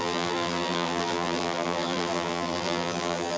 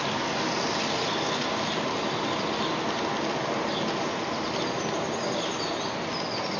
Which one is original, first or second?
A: second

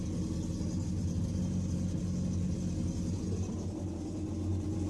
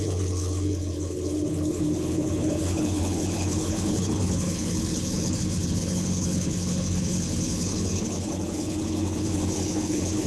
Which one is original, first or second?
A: first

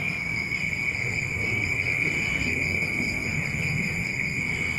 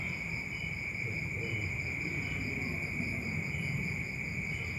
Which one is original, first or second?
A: second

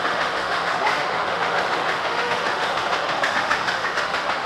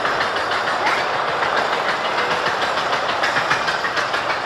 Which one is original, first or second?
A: second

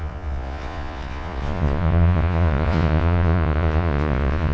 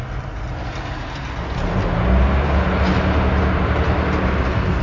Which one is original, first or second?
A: second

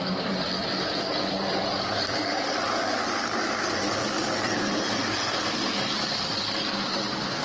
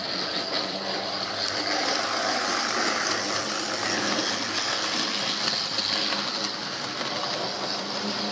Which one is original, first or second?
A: second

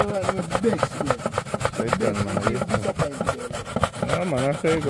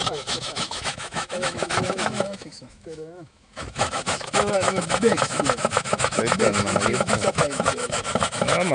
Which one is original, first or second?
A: first